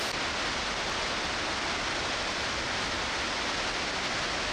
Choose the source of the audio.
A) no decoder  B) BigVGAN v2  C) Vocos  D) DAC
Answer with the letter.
A